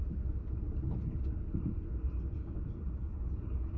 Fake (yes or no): yes